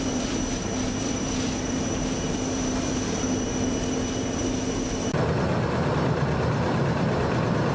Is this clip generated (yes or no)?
yes